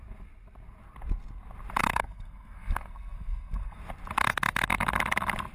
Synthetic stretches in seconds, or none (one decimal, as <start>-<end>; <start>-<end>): 1.8-3.8